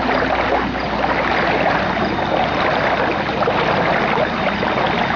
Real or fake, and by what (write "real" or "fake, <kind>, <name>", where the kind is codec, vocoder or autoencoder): real